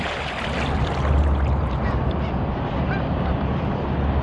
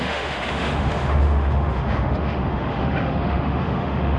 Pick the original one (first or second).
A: first